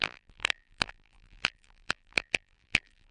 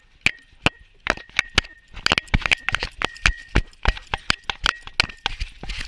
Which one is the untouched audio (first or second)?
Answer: second